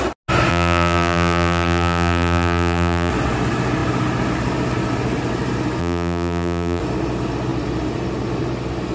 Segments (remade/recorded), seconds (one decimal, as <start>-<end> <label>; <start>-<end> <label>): 0.0-0.5 recorded; 0.5-3.1 remade; 3.1-5.8 recorded; 5.8-6.8 remade; 6.8-8.9 recorded